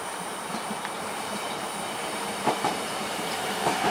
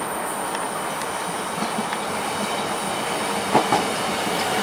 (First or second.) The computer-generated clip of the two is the first